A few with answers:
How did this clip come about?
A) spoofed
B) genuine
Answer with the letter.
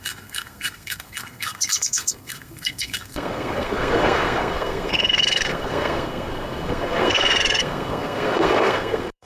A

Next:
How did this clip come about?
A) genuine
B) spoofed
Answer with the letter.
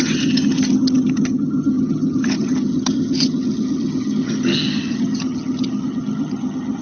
B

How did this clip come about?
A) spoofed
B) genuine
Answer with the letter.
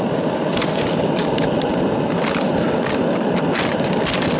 B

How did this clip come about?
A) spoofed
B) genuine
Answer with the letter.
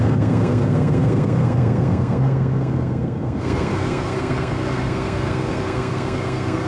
A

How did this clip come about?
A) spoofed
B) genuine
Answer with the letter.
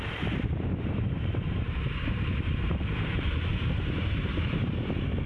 A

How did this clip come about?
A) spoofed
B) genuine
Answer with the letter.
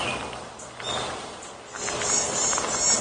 B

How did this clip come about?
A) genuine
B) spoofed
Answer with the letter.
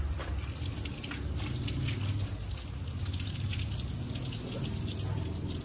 A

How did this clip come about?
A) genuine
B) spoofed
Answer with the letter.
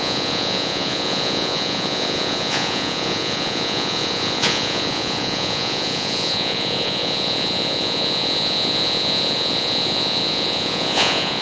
B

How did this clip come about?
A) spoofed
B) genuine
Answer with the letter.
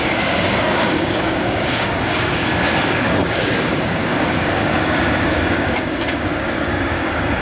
A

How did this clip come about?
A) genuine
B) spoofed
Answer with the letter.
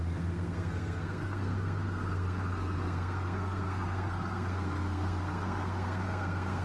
B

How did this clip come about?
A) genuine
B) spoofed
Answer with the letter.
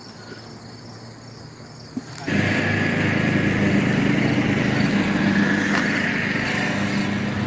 A